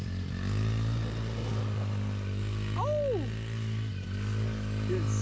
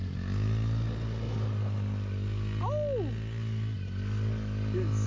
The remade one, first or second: first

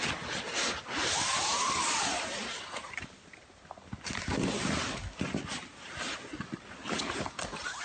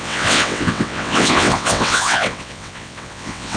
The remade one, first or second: second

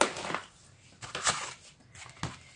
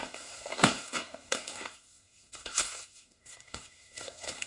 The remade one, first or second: second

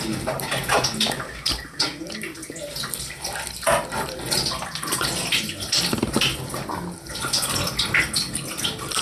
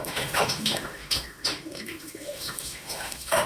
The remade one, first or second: second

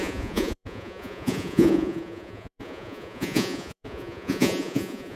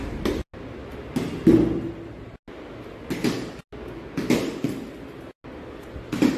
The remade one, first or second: first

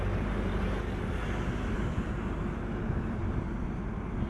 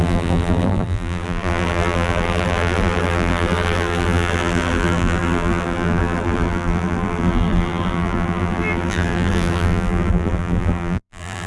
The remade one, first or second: second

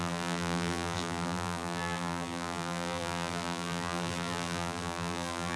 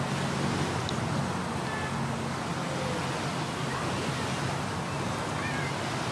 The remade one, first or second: first